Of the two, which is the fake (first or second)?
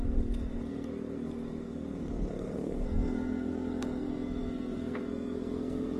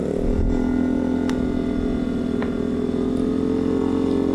first